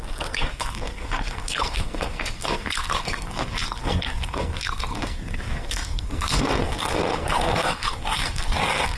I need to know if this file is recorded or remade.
remade